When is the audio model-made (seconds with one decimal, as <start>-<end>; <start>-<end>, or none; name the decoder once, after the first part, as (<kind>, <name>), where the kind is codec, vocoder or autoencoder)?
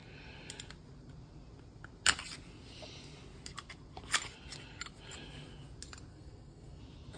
6.1-6.8 (codec, SNAC)